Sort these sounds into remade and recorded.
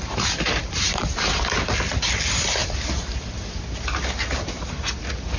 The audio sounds recorded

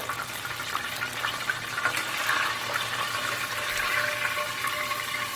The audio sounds recorded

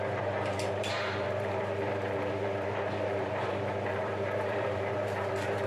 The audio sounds remade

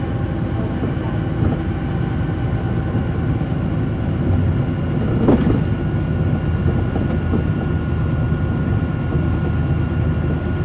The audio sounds recorded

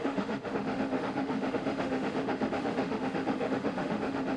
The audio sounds remade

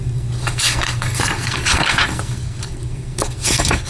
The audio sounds remade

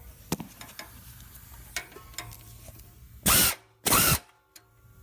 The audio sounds recorded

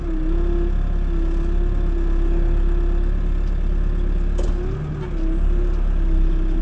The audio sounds recorded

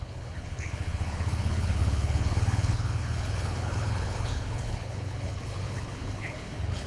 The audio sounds remade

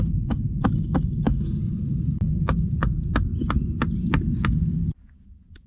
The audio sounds recorded